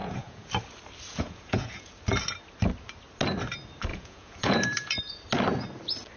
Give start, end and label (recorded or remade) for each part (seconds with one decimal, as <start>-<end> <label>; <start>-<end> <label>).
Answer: 0.0-0.5 remade; 0.5-1.1 recorded; 1.1-1.9 remade; 1.9-3.9 recorded; 3.9-5.0 remade; 5.0-6.2 recorded